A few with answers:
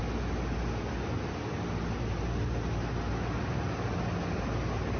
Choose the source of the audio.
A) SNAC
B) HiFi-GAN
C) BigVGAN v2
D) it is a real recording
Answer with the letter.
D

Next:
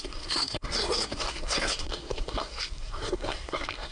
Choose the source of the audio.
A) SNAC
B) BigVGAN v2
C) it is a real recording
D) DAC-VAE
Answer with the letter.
A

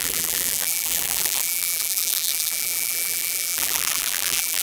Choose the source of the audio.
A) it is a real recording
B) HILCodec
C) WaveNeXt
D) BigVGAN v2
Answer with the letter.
D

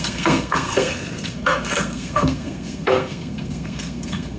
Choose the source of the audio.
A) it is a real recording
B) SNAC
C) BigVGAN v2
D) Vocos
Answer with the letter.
B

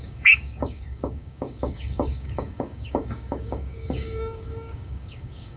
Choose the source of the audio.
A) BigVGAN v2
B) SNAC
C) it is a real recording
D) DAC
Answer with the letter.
D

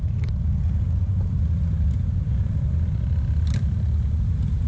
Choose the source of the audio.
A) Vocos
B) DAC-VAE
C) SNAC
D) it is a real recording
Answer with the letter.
D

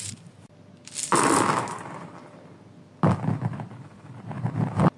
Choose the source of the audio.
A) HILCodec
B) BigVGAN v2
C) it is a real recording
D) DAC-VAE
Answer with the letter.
B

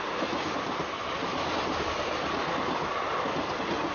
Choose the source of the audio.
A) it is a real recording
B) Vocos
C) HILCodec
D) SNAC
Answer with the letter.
A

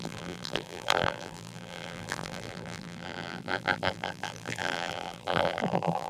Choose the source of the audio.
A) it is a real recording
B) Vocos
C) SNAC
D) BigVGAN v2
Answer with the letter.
D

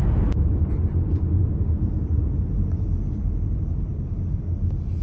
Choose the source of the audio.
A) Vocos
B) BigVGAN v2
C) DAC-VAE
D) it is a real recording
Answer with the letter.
D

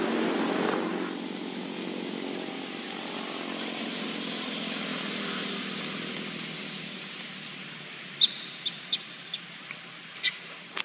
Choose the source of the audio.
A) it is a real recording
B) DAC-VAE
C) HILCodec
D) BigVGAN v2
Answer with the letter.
A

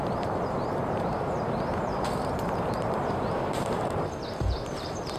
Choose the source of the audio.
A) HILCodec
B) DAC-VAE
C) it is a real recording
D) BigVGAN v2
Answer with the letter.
D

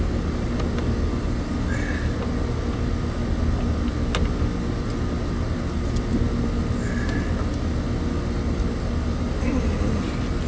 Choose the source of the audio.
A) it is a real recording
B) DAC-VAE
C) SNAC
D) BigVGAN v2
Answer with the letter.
A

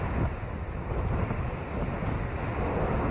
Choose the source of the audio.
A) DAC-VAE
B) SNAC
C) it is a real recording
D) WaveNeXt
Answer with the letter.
C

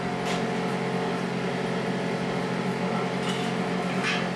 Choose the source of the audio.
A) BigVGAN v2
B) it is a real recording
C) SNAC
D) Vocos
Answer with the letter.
B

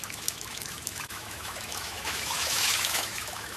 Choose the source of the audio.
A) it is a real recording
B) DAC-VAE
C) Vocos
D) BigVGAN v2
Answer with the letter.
B